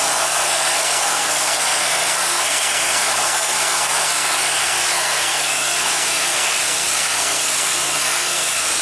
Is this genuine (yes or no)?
no